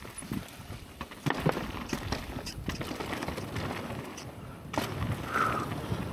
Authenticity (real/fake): real